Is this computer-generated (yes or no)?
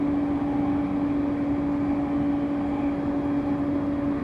no